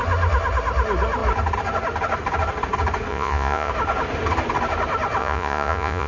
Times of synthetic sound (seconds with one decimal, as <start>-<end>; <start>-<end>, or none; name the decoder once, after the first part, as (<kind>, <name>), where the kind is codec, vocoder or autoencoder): 3.1-3.7 (vocoder, Vocos); 5.2-6.1